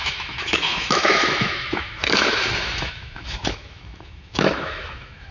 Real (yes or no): no